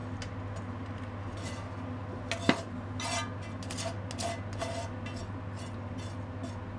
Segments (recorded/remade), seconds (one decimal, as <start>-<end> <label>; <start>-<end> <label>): 0.0-6.8 recorded